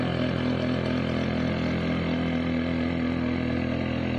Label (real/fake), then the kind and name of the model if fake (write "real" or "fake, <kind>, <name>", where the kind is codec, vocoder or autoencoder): real